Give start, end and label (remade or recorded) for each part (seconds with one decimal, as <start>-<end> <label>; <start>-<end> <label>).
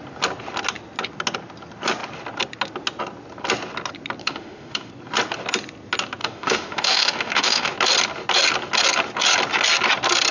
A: 0.0-4.2 recorded; 4.2-4.9 remade; 4.9-6.2 recorded; 6.2-7.7 remade; 7.7-10.3 recorded